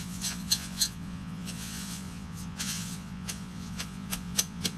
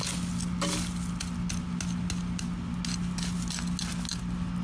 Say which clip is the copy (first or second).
first